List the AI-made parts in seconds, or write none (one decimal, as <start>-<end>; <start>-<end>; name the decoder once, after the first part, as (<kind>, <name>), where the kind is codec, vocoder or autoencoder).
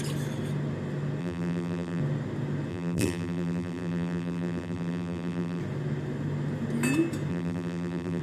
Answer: 1.2-2.0 (vocoder, BigVGAN v2); 2.7-5.6; 7.3-8.2